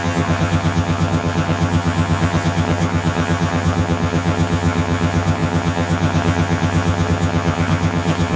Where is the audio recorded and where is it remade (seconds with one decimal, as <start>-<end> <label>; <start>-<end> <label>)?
0.0-8.4 remade